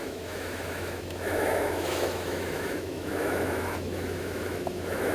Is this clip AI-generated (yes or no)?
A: yes